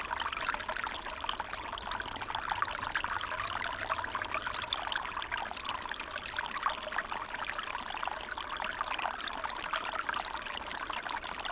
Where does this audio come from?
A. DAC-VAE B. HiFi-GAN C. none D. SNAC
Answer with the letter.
C